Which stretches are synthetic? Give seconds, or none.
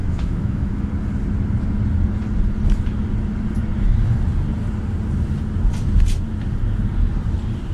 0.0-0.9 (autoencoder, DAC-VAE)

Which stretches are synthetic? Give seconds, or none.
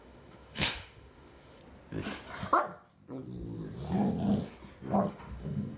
0.0-1.6 (autoencoder, DAC-VAE); 5.1-5.8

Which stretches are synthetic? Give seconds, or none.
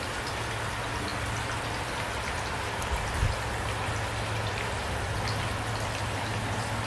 none